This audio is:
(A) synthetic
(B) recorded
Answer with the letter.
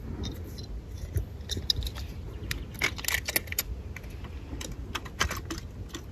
B